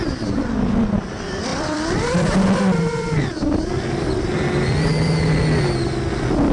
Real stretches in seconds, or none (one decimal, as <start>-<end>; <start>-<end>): 0.0-1.5; 5.4-6.5